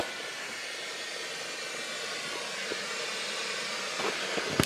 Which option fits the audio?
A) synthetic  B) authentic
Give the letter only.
B